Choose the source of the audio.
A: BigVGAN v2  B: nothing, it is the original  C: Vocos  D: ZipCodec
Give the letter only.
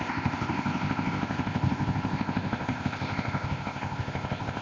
D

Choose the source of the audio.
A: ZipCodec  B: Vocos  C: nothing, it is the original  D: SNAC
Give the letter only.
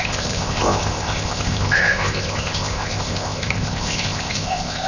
A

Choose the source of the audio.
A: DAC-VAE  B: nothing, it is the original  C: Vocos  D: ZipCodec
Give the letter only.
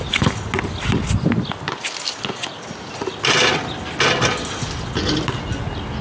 B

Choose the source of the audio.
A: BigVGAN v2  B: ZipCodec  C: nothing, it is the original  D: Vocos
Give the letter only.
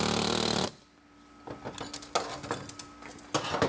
C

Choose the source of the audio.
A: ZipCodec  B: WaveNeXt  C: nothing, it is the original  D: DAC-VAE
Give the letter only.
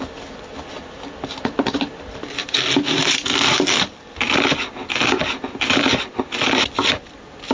C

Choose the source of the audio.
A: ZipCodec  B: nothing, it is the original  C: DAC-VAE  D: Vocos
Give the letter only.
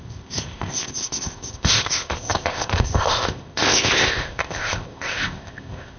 A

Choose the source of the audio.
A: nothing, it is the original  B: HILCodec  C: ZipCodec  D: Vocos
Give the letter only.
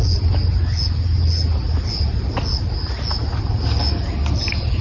A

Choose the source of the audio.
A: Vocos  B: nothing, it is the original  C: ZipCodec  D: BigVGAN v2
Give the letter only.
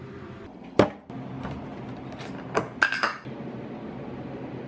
B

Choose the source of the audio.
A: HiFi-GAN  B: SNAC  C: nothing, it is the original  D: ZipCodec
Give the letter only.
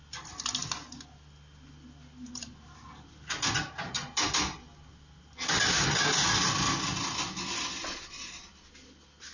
C